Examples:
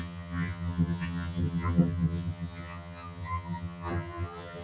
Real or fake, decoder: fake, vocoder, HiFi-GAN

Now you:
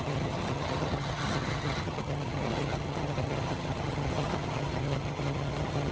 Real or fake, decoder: fake, vocoder, HiFi-GAN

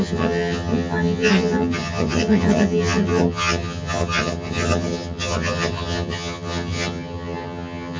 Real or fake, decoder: fake, vocoder, HiFi-GAN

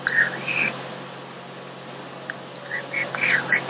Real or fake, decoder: real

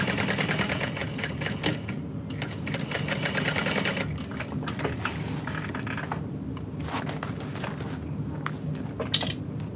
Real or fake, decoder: real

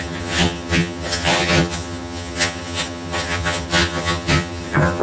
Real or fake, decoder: fake, vocoder, HiFi-GAN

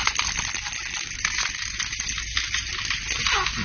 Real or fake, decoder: real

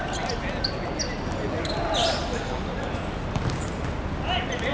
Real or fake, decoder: real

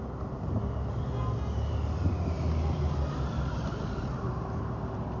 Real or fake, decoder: real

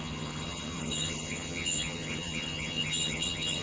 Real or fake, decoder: fake, vocoder, HiFi-GAN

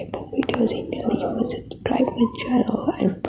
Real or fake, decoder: real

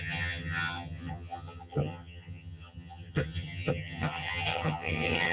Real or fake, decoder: fake, vocoder, HiFi-GAN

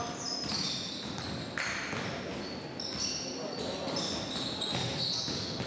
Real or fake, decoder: real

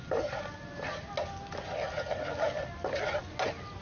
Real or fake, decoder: real